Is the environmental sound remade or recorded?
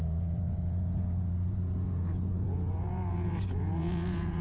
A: remade